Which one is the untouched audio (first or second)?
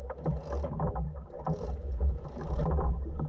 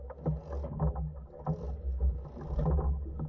second